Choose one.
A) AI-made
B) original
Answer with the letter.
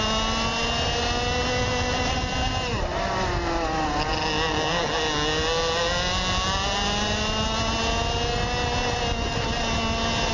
B